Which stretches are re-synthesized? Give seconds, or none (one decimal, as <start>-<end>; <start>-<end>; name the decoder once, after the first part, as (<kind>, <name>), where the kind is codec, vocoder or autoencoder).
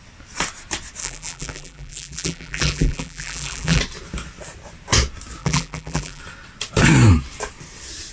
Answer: 1.0-3.8 (vocoder, BigVGAN v2); 5.4-6.2